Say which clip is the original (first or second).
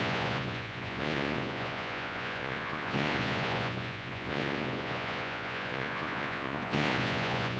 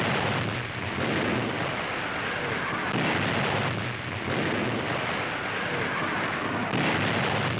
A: second